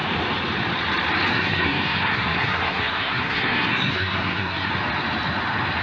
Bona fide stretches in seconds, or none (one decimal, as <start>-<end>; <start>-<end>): 0.0-1.3; 4.7-5.8

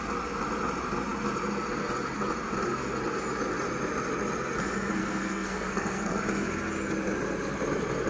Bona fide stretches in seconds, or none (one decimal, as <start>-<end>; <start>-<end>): 0.0-5.0; 6.2-8.1

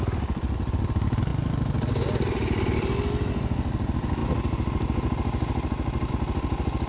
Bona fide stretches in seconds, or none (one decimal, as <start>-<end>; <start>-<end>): 0.0-6.9

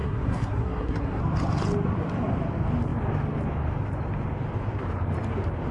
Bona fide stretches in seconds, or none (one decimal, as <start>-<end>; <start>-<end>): 1.2-5.7

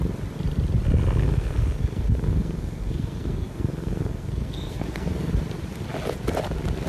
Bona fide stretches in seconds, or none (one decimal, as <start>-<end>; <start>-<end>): 0.0-1.2; 5.3-6.9

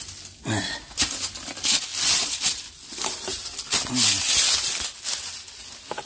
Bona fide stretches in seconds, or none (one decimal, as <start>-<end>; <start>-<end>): 0.0-6.1

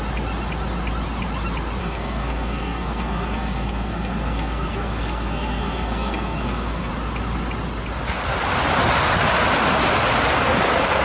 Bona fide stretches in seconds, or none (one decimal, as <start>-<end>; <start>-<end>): 0.0-1.8; 6.9-11.0